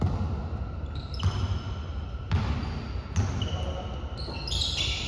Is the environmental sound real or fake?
real